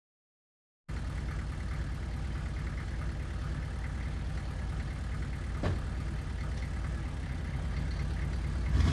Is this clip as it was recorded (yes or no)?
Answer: yes